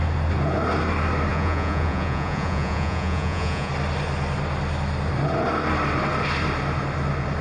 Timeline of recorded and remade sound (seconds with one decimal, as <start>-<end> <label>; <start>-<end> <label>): 0.0-1.3 recorded; 1.3-3.7 remade; 3.7-7.4 recorded